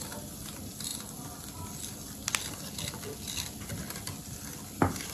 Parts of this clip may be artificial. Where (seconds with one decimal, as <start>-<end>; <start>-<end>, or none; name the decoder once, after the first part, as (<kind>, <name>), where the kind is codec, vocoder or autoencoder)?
none